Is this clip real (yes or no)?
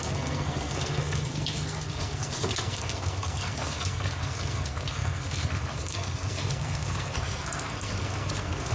no